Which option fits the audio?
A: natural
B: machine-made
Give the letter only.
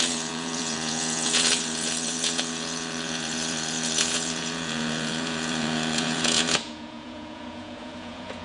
B